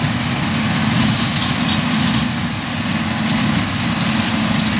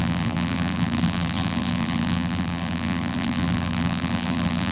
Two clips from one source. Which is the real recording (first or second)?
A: first